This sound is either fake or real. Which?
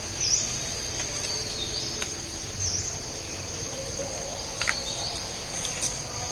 real